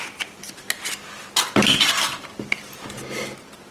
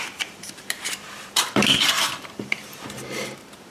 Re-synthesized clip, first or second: second